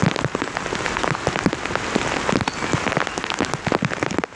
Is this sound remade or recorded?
recorded